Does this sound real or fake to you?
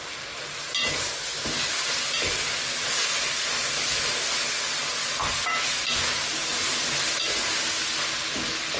real